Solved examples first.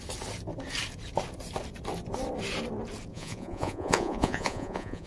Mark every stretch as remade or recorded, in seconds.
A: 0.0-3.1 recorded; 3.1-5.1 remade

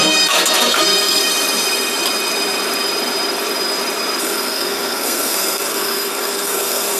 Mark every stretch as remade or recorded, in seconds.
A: 0.0-1.2 remade; 1.2-4.2 recorded; 4.2-7.0 remade

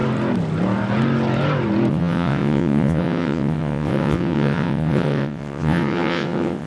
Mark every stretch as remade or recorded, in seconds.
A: 0.0-1.9 recorded; 1.9-6.7 remade

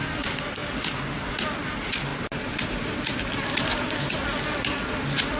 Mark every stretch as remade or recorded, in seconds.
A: 0.0-2.1 recorded; 2.1-3.0 remade; 3.0-5.4 recorded